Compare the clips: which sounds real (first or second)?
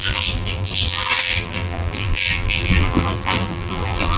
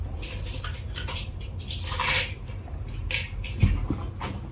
second